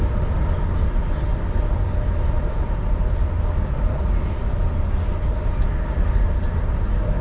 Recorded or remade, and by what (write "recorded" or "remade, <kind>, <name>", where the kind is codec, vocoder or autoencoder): recorded